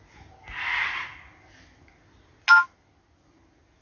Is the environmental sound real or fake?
real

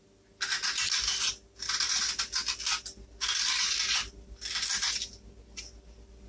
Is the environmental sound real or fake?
real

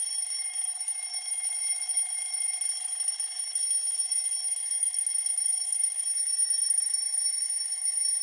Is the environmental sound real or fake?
real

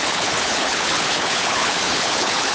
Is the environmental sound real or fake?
fake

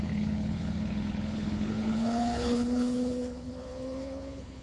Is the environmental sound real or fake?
fake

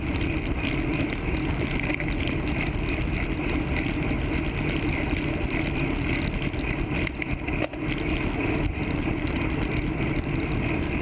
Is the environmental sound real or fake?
real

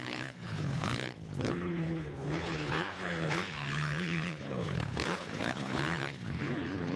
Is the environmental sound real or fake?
fake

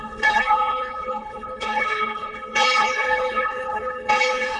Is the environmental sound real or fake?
fake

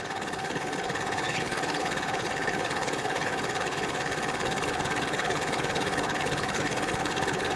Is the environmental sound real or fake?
fake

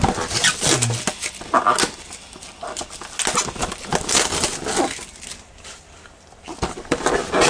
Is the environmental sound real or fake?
real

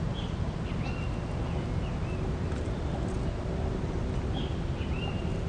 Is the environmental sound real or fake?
real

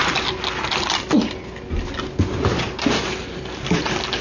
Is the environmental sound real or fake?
real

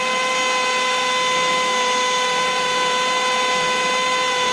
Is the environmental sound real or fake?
real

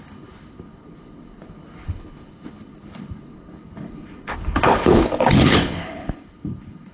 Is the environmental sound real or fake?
fake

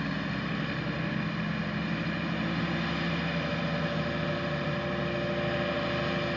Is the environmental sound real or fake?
real